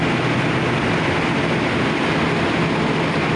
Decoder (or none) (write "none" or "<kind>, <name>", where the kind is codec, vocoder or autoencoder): none